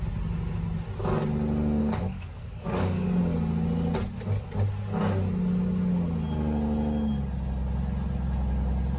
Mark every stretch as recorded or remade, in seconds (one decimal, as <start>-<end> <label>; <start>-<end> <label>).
0.0-1.8 recorded; 1.8-3.2 remade; 3.2-9.0 recorded